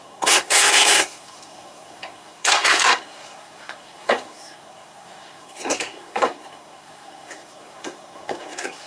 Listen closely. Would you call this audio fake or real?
fake